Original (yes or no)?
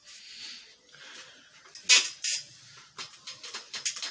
yes